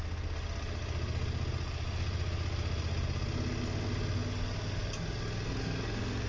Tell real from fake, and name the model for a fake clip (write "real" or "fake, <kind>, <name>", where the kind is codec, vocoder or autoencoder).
real